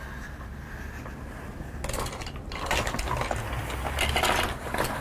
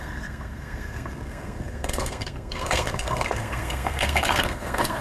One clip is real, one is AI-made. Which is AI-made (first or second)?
second